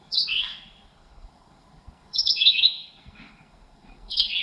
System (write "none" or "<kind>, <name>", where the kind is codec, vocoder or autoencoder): codec, SNAC